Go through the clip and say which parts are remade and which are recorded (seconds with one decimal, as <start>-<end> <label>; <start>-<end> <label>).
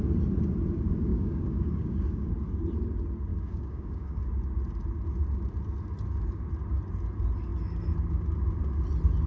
0.0-1.1 recorded; 1.1-2.3 remade; 2.3-3.3 recorded; 3.3-4.2 remade; 4.2-9.3 recorded